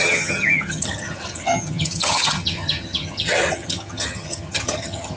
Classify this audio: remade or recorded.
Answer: remade